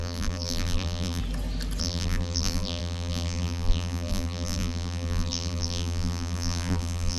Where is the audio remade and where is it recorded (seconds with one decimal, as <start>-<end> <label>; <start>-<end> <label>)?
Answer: 0.0-1.2 remade; 1.2-1.8 recorded; 1.8-7.2 remade